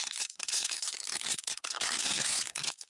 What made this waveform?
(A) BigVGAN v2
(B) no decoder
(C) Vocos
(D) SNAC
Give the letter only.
D